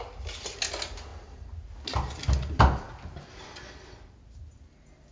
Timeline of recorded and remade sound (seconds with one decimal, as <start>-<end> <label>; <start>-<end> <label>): 0.0-5.1 recorded

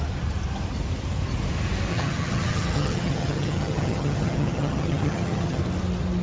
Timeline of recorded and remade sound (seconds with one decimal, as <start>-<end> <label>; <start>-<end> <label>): 0.0-1.9 recorded; 1.9-5.6 remade; 5.6-6.2 recorded

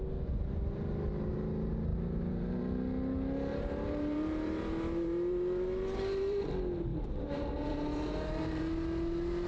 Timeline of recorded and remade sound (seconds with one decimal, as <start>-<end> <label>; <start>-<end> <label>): 0.0-1.9 recorded; 1.9-2.6 remade; 2.6-3.5 recorded; 3.5-6.5 remade; 6.5-6.9 recorded; 6.9-8.6 remade; 8.6-9.5 recorded

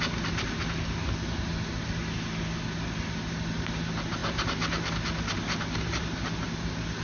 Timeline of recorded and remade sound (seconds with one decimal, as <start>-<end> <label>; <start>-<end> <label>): 0.0-7.0 recorded

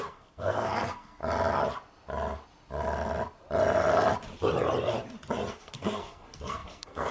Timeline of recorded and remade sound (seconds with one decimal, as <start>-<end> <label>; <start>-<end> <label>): 0.0-1.2 remade; 1.2-5.5 recorded; 5.5-7.1 remade

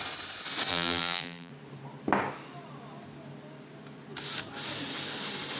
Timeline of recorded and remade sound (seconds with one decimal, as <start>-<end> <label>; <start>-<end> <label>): 0.0-0.7 recorded; 0.7-1.5 remade; 1.5-5.6 recorded

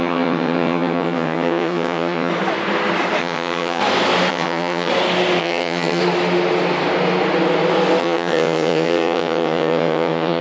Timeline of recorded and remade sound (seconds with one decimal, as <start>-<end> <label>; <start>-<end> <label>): 0.0-2.3 remade; 2.3-3.2 recorded; 3.2-3.8 remade; 3.8-4.3 recorded; 4.3-4.9 remade; 4.9-5.4 recorded; 5.4-6.0 remade; 6.0-8.0 recorded; 8.0-10.4 remade

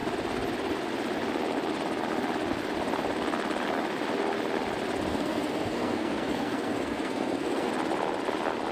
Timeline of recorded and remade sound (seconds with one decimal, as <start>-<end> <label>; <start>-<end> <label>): 0.0-5.1 recorded; 5.1-7.7 remade; 7.7-8.7 recorded